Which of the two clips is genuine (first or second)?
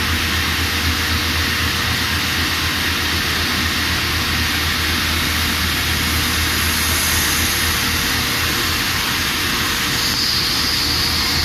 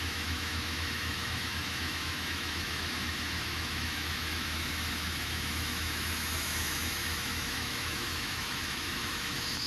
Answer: first